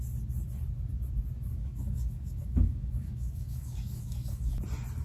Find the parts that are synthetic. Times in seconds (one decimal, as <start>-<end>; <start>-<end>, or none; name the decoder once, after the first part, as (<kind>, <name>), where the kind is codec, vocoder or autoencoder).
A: 1.5-4.5 (codec, DAC)